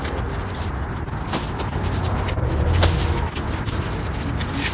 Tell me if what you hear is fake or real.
real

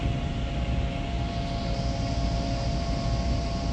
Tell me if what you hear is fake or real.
real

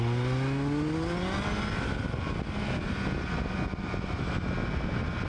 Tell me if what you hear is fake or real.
real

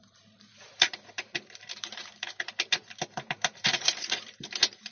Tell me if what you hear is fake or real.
fake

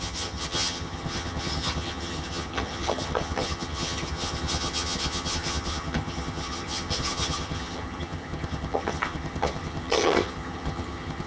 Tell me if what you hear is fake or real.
fake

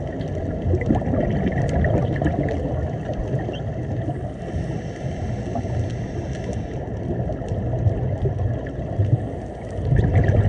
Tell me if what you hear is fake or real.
real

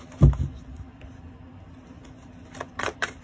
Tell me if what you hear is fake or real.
real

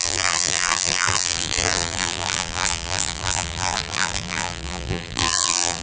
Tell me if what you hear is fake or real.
fake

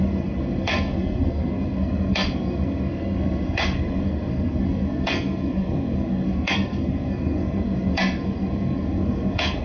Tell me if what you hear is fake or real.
fake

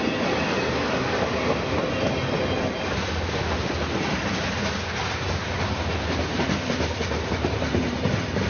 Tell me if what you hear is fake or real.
real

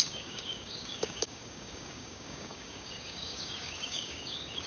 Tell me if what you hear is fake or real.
fake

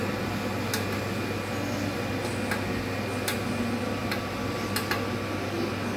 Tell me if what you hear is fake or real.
real